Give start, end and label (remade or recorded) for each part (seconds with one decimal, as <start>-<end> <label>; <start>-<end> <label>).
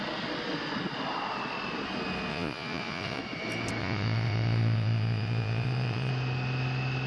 0.0-2.3 recorded; 2.3-3.2 remade; 3.2-3.8 recorded; 3.8-6.1 remade; 6.1-7.1 recorded